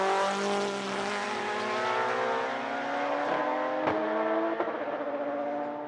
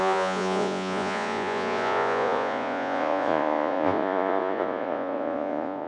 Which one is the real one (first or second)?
first